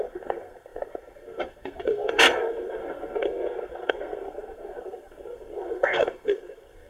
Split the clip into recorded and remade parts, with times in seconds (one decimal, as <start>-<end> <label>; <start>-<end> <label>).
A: 0.0-6.9 remade